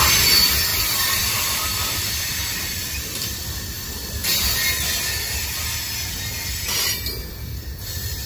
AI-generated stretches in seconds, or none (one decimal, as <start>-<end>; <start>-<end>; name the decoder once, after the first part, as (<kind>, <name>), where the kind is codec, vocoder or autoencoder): 0.0-4.2 (vocoder, BigVGAN v2); 6.8-8.3